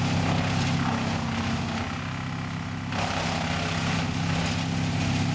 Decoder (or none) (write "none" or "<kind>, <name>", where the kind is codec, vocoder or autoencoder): none